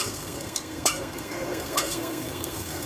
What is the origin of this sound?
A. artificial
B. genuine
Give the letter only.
A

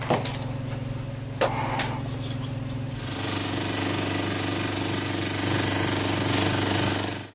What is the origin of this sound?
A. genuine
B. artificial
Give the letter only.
A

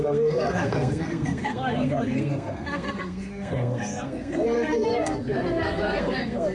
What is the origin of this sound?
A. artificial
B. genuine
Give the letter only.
A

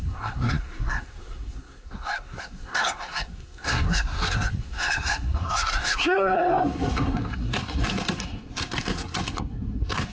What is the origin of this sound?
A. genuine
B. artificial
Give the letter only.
B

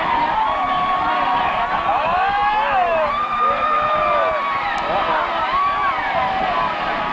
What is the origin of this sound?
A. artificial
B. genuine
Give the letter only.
B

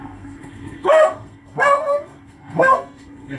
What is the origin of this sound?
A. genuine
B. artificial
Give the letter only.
B